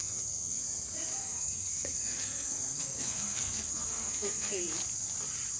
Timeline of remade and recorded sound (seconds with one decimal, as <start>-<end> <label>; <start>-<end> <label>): 0.0-0.6 remade; 0.6-1.2 recorded; 1.2-4.6 remade; 4.6-5.6 recorded